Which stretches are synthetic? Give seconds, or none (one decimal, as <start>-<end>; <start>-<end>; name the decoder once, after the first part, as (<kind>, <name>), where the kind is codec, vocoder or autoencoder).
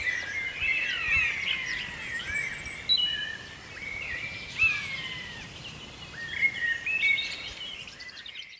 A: 3.2-5.8 (vocoder, BigVGAN v2); 7.5-8.6